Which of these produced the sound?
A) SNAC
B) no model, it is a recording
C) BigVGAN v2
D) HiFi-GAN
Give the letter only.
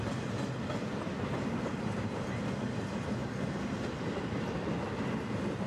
B